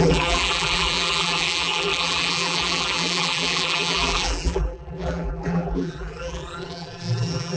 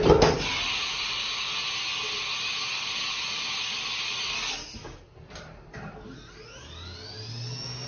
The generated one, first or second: first